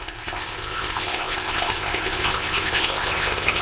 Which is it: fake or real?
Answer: fake